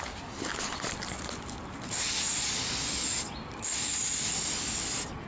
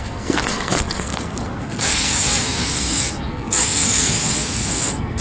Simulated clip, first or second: second